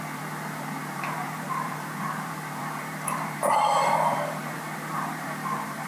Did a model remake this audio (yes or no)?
yes